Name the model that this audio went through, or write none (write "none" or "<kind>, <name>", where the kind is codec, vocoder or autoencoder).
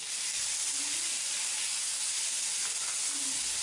none